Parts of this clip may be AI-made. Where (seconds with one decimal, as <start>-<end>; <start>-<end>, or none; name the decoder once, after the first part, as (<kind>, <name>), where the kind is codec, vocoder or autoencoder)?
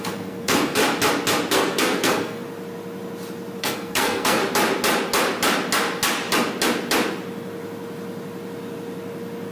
0.0-0.8 (codec, SNAC); 1.5-2.4; 3.6-4.4